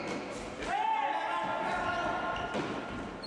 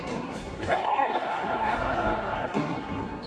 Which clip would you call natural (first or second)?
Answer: first